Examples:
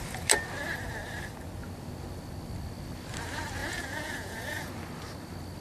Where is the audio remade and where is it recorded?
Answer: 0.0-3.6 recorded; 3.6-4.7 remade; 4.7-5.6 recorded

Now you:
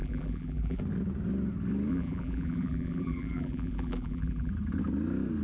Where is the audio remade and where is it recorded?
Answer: 0.0-0.8 remade; 0.8-1.9 recorded; 1.9-4.5 remade; 4.5-5.4 recorded

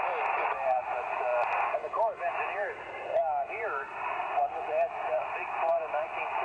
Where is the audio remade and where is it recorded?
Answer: 0.0-6.4 recorded

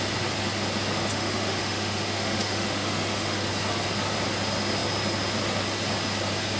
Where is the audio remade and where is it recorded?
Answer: 0.0-1.1 recorded; 1.1-3.5 remade; 3.5-6.6 recorded

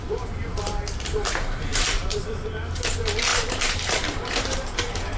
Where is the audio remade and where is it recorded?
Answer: 0.0-1.7 recorded; 1.7-2.2 remade; 2.2-3.3 recorded; 3.3-5.2 remade

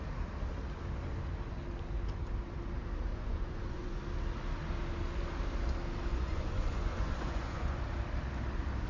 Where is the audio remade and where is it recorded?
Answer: 0.0-3.1 recorded; 3.1-4.0 remade; 4.0-6.1 recorded; 6.1-7.8 remade; 7.8-8.9 recorded

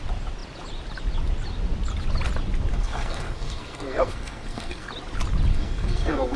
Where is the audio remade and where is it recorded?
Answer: 0.0-2.7 recorded; 2.7-4.9 remade; 4.9-5.5 recorded; 5.5-6.4 remade